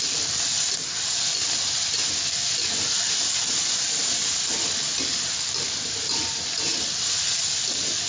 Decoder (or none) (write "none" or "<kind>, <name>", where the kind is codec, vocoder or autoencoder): none